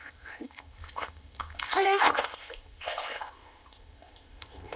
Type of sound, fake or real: fake